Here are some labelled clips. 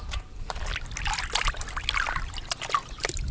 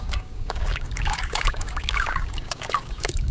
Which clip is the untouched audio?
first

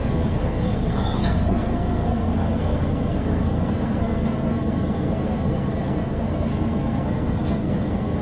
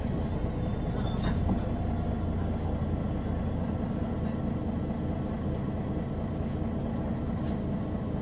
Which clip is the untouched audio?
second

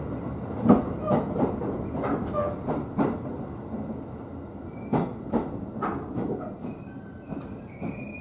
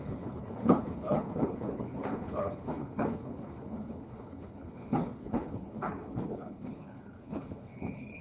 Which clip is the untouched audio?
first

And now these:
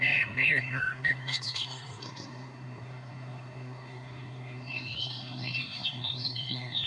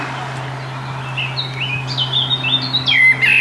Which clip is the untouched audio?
second